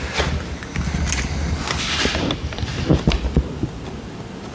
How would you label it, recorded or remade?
recorded